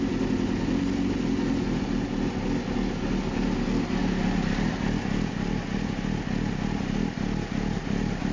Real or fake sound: real